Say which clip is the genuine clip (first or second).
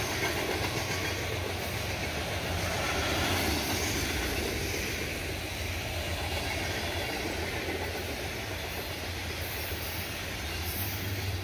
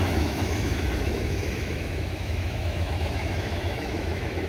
first